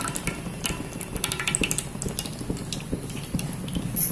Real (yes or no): yes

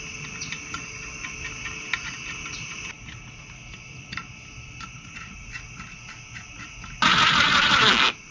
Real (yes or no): yes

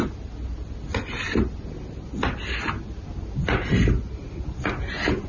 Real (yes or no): yes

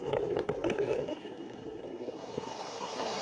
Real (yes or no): no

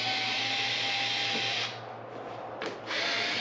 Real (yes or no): yes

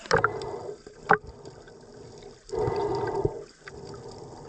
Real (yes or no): yes